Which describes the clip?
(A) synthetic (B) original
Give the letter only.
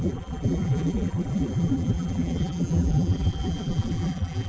A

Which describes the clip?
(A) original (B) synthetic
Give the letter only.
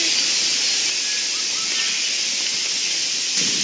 A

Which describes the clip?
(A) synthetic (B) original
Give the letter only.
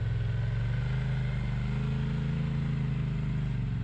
B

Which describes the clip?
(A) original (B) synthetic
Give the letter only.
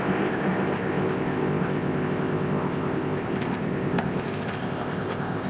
B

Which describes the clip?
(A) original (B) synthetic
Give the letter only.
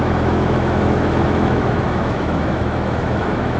B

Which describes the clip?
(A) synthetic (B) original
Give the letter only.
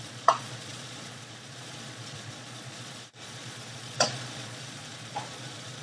A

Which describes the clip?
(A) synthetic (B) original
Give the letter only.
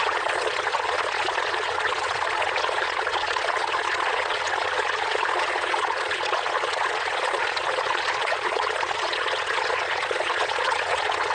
A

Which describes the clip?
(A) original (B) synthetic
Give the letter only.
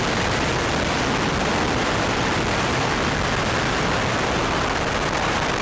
A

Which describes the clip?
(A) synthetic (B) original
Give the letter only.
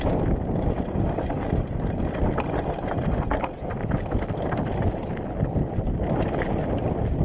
B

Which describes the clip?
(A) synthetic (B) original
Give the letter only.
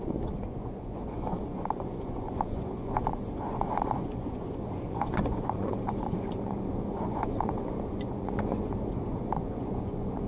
A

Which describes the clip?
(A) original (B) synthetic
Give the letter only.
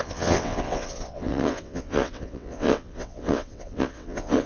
B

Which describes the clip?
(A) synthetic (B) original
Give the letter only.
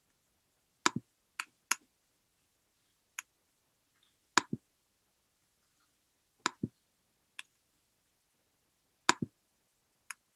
B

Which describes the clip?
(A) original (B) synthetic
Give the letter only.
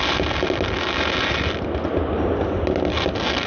A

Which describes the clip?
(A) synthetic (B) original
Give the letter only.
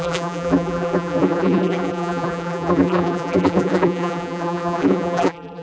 A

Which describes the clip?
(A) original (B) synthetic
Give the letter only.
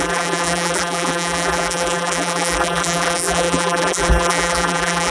B